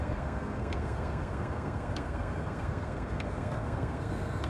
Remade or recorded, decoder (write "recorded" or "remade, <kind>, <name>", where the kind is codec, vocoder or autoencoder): remade, codec, SNAC